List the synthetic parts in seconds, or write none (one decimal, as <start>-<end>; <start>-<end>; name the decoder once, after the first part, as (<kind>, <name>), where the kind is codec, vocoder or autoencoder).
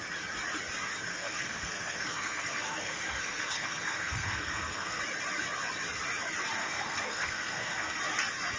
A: 1.1-5.0 (codec, SNAC); 6.6-8.0